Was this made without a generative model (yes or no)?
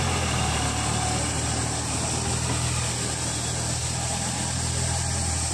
yes